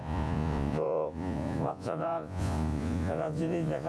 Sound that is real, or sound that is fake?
fake